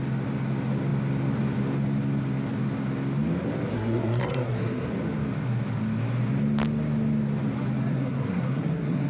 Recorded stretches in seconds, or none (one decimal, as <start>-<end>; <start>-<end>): 0.0-3.7; 4.9-7.9